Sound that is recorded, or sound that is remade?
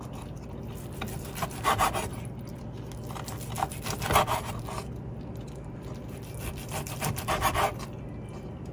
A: recorded